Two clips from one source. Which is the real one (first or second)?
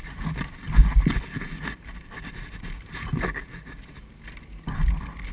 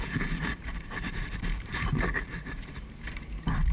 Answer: first